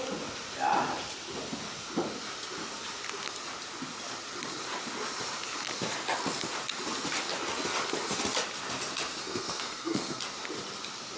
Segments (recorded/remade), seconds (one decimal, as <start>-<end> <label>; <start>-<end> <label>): 0.0-9.2 recorded; 9.2-10.2 remade; 10.2-11.2 recorded